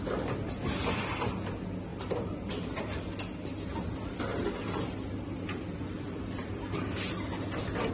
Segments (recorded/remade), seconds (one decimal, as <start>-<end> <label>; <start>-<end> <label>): 0.0-1.9 recorded; 1.9-3.1 remade; 3.1-4.3 recorded; 4.3-7.5 remade; 7.5-7.9 recorded